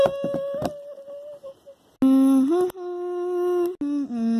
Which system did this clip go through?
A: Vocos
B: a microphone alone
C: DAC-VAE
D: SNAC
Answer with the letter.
B